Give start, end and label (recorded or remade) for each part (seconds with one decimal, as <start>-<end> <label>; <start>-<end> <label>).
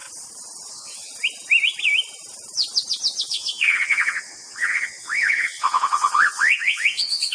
0.0-0.7 recorded; 0.7-1.1 remade; 1.1-3.3 recorded; 3.3-7.3 remade